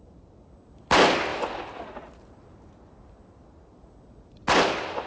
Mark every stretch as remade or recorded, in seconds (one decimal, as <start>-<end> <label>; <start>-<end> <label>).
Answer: 0.0-5.1 recorded